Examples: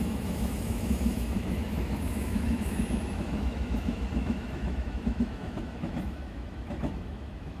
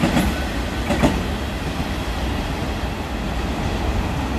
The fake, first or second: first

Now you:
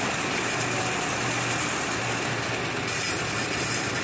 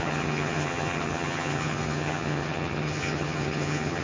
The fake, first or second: second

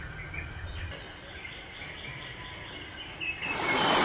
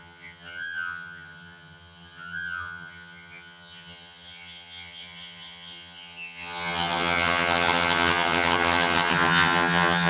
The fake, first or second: second